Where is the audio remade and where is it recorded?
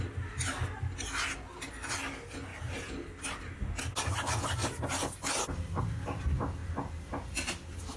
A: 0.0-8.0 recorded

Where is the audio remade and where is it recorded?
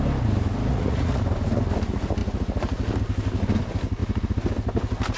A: 0.0-0.7 recorded; 0.7-1.2 remade; 1.2-5.2 recorded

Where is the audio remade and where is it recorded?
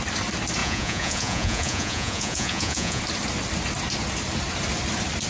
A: 0.0-0.6 recorded; 0.6-3.0 remade; 3.0-5.3 recorded